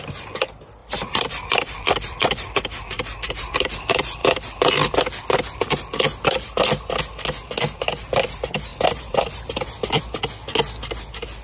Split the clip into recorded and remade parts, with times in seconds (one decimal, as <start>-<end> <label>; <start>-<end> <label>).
0.0-0.8 recorded; 0.8-3.3 remade; 3.3-8.7 recorded; 8.7-10.0 remade; 10.0-11.4 recorded